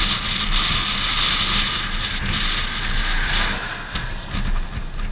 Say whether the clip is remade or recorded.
recorded